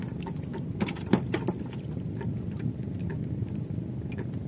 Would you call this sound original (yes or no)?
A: yes